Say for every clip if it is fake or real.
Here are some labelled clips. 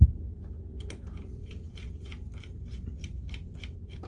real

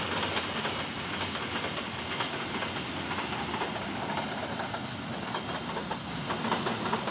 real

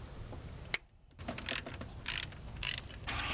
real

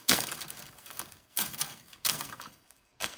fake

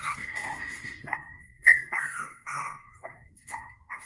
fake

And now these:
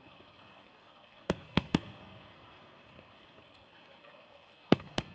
fake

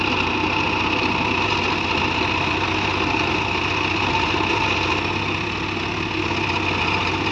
real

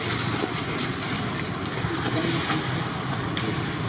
real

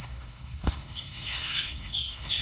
fake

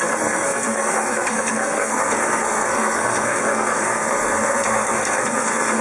fake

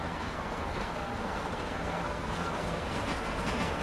fake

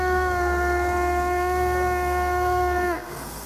fake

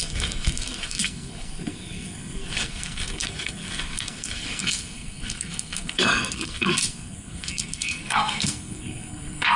fake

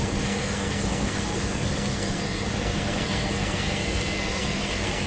fake